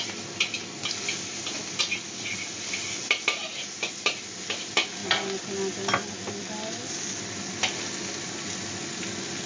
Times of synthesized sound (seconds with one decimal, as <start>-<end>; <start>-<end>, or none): none